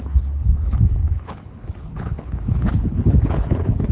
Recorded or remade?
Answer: remade